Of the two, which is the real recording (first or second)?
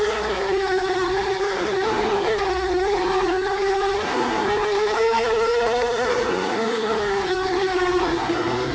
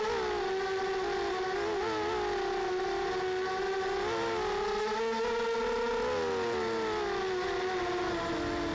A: second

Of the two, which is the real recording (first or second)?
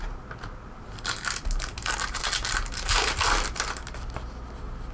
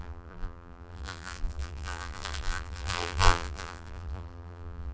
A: first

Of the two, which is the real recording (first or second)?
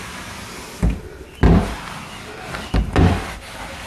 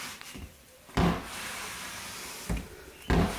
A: first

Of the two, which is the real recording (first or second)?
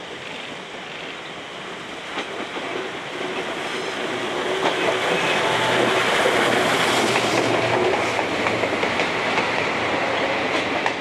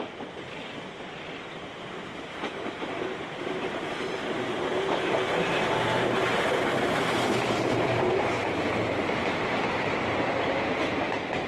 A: first